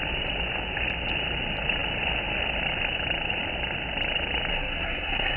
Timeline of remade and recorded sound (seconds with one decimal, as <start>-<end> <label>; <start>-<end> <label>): 0.0-4.5 recorded; 4.5-5.4 remade